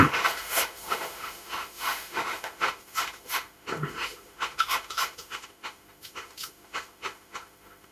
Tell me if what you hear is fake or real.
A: fake